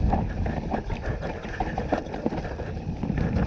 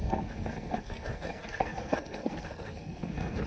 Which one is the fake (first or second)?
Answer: second